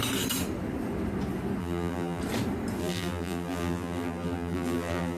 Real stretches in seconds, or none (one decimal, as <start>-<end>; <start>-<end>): 0.0-1.6; 2.2-2.8